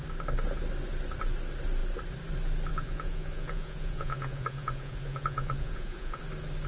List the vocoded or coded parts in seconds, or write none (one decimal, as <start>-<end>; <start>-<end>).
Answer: 2.7-6.2